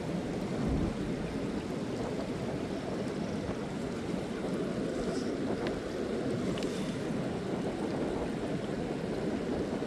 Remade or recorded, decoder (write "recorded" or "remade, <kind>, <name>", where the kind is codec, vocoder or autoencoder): recorded